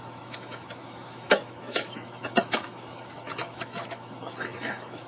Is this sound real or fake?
fake